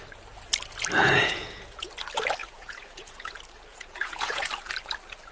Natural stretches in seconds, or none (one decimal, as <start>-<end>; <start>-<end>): 0.0-1.0; 1.9-2.4; 3.3-3.7; 4.5-5.3